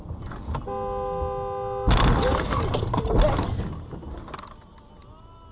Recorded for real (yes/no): yes